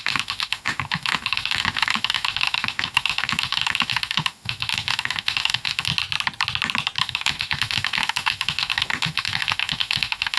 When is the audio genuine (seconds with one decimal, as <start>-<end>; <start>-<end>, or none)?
5.9-7.0